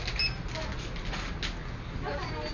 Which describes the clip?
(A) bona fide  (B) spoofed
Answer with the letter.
A